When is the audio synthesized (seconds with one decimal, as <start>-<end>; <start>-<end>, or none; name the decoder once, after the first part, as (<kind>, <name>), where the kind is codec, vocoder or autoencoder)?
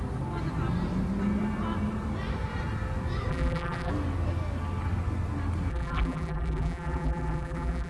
3.3-3.9 (vocoder, BigVGAN v2); 5.7-7.9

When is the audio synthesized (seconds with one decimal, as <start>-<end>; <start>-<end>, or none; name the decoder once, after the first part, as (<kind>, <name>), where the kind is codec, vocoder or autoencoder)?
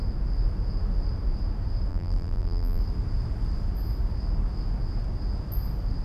1.9-2.8 (vocoder, BigVGAN v2)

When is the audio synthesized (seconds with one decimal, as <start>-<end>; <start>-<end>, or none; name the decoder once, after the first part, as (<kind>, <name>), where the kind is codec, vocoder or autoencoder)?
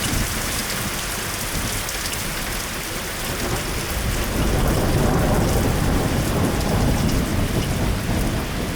0.0-0.6 (vocoder, BigVGAN v2); 5.8-7.3